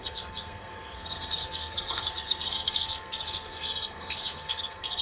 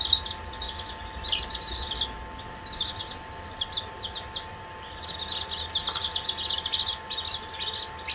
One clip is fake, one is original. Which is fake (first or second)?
first